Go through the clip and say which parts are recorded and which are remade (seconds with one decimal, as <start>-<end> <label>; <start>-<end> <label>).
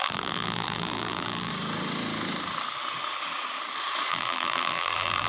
0.0-1.5 remade; 1.5-4.1 recorded; 4.1-5.3 remade